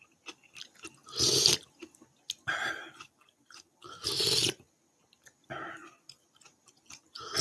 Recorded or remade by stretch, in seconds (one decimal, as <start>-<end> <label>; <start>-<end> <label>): 0.0-7.4 recorded

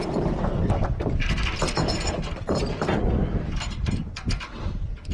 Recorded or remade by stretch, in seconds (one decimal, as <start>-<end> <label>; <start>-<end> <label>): 0.0-2.6 remade; 2.6-5.1 recorded